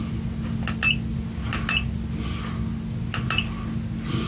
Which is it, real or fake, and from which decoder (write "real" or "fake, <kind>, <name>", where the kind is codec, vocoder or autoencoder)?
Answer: real